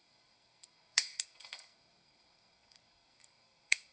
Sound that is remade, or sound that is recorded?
remade